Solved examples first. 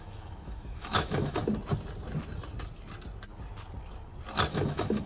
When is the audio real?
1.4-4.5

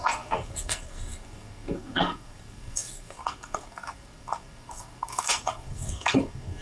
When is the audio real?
none

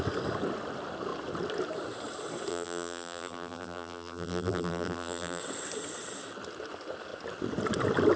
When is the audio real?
0.0-2.5; 5.4-8.2

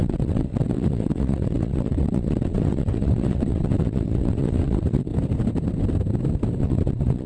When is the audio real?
5.1-6.6

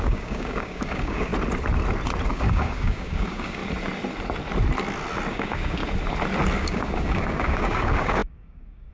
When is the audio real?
1.3-2.3; 3.6-5.3; 5.8-6.6

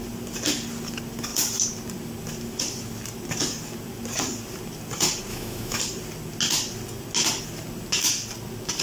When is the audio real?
0.0-5.3; 5.8-8.8

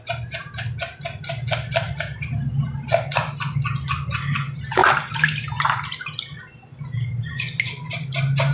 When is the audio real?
0.0-8.5

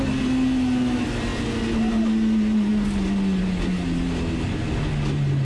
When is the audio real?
0.0-5.4